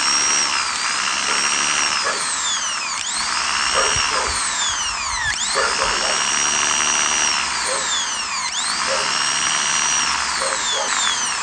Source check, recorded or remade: recorded